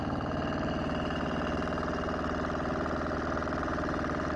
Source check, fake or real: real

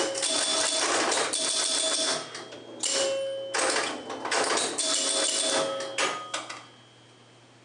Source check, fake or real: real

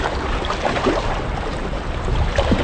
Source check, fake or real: real